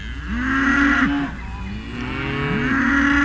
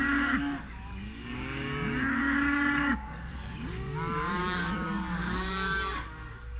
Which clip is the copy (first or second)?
second